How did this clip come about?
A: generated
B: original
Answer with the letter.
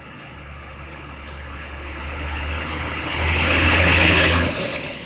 A